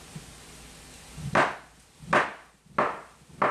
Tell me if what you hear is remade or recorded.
recorded